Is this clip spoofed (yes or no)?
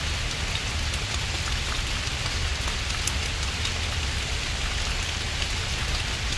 no